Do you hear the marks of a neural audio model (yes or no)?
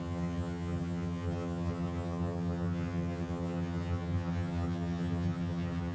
yes